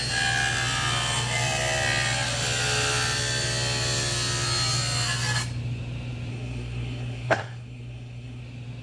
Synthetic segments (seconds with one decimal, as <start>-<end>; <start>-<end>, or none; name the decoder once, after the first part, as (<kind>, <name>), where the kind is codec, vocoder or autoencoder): 6.3-8.4 (codec, SNAC)